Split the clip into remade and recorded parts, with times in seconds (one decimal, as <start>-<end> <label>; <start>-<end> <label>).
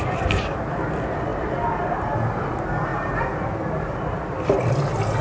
0.0-5.2 recorded